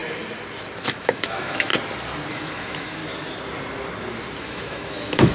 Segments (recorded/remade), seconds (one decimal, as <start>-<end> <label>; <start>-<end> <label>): 0.0-0.8 recorded; 0.8-1.7 remade; 1.7-2.3 recorded; 2.3-3.0 remade; 3.0-4.4 recorded; 4.4-5.3 remade